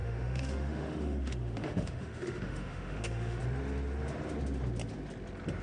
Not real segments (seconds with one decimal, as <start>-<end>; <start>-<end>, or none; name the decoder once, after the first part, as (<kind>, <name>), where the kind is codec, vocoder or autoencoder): 0.0-3.4 (autoencoder, DAC-VAE)